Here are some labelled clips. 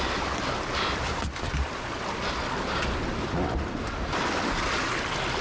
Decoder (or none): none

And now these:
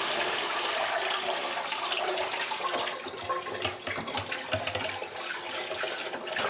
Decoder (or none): none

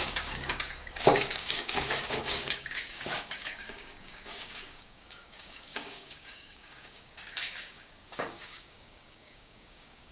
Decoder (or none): codec, DAC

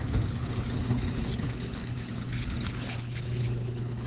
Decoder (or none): codec, HILCodec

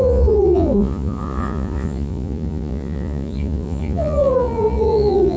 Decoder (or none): vocoder, Vocos